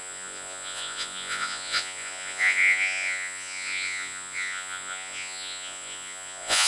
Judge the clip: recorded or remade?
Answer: remade